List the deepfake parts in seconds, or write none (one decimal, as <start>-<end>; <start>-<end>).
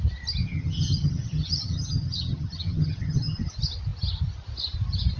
0.4-3.5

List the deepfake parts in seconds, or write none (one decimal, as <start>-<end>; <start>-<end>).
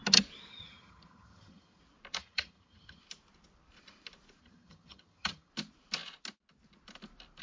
0.5-1.8; 2.2-3.0; 4.4-5.5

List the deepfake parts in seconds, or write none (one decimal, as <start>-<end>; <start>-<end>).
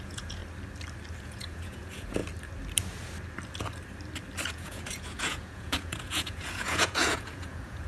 0.0-0.4; 1.2-2.2; 4.5-7.9